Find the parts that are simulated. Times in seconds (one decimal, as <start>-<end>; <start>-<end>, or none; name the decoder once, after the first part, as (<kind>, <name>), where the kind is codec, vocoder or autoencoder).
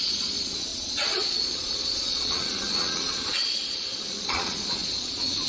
0.0-5.5 (vocoder, Vocos)